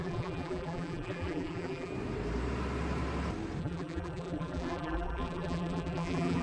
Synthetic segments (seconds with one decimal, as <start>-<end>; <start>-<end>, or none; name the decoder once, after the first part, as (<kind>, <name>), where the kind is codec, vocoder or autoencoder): 0.0-1.9 (vocoder, BigVGAN v2); 3.6-6.4